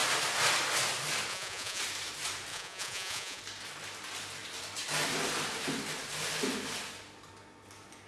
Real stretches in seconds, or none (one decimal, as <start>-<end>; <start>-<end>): 0.0-1.3; 1.8-2.5; 3.4-8.1